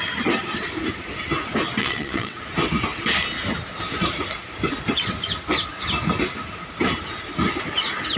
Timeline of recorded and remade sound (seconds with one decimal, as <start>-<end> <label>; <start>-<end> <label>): 0.0-1.8 recorded; 1.8-2.4 remade; 2.4-8.2 recorded